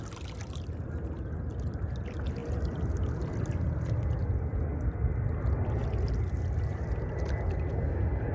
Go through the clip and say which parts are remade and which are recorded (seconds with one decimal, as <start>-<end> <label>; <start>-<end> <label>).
0.0-2.4 recorded; 2.4-3.2 remade; 3.2-8.3 recorded